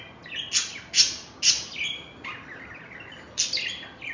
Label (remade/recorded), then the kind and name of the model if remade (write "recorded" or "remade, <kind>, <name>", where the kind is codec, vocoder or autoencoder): recorded